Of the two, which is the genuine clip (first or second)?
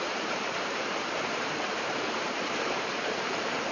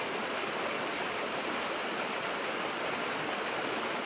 second